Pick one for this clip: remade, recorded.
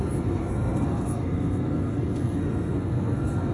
remade